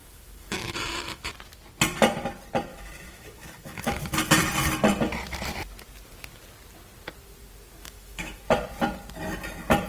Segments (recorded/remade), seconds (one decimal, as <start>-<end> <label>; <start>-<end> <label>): 0.0-1.3 remade; 1.3-2.7 recorded; 2.7-4.1 remade; 4.1-7.8 recorded; 7.8-8.4 remade; 8.4-9.9 recorded